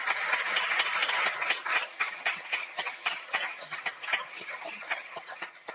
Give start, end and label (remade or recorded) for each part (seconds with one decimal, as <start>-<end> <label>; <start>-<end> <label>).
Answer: 0.0-1.7 recorded; 1.7-3.8 remade; 3.8-4.3 recorded; 4.3-5.7 remade